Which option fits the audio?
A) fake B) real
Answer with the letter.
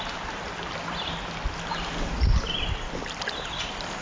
B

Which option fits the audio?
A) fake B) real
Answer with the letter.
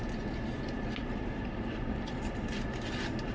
B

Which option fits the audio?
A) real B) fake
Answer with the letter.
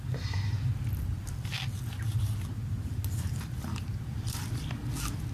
A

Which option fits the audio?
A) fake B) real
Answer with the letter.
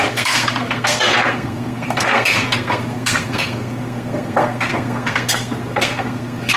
A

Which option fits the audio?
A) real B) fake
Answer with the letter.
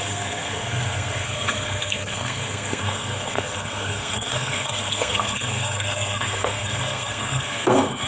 B